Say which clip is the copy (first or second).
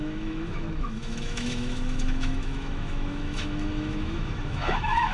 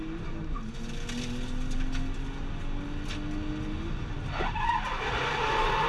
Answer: first